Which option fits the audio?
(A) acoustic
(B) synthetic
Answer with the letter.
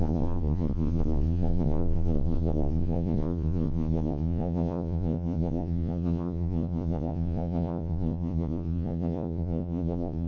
B